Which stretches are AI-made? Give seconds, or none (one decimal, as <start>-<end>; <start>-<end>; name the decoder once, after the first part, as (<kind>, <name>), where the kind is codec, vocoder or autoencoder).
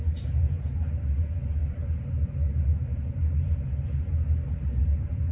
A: 0.0-5.3 (vocoder, BigVGAN v2)